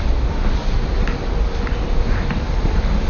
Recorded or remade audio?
recorded